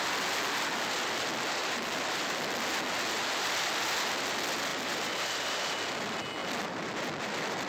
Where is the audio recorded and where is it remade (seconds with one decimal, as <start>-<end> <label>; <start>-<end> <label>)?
0.0-1.6 recorded; 1.6-2.4 remade; 2.4-4.7 recorded; 4.7-5.5 remade; 5.5-7.7 recorded